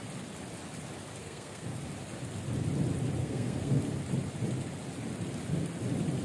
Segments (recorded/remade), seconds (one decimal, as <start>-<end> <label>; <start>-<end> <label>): 0.0-1.2 recorded; 1.2-1.8 remade; 1.8-3.2 recorded; 3.2-3.8 remade; 3.8-6.2 recorded